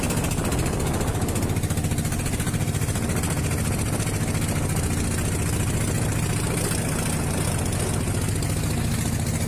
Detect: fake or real real